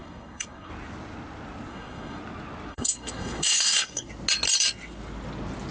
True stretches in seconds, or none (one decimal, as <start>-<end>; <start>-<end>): 0.7-1.7; 2.2-2.7; 4.1-5.7